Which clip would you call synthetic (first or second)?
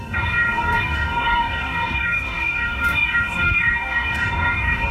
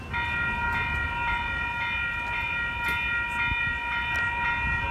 first